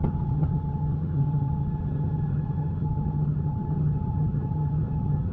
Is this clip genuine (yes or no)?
no